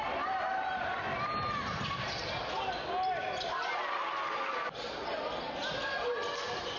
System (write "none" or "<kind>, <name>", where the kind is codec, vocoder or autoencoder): none